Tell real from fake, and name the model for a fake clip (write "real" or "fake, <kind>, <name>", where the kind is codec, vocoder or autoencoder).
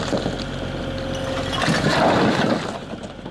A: real